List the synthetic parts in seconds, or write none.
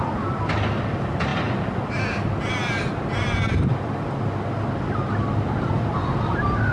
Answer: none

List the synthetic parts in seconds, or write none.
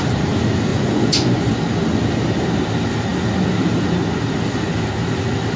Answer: 0.7-1.5 (vocoder, Vocos)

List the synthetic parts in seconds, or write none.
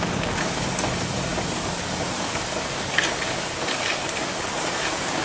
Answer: 0.0-5.2 (codec, DAC)